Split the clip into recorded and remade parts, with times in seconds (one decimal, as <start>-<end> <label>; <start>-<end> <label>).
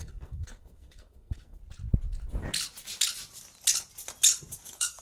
0.0-1.6 remade; 1.6-4.6 recorded; 4.6-5.0 remade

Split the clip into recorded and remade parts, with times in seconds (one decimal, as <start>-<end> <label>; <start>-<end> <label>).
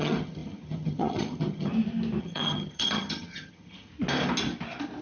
0.0-1.7 remade; 1.7-2.2 recorded; 2.2-3.9 remade; 3.9-5.0 recorded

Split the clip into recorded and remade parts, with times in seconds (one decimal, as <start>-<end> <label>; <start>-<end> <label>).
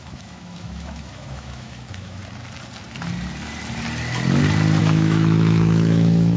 0.0-2.2 remade; 2.2-4.8 recorded; 4.8-6.4 remade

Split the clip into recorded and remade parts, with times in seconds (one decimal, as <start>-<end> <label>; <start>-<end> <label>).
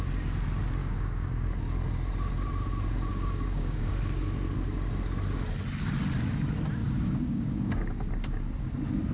0.0-0.8 recorded; 0.8-1.5 remade; 1.5-3.1 recorded; 3.1-3.9 remade; 3.9-6.8 recorded; 6.8-7.8 remade; 7.8-9.1 recorded